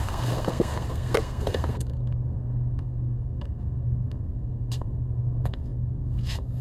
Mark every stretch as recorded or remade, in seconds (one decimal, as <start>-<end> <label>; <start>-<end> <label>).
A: 0.0-6.6 remade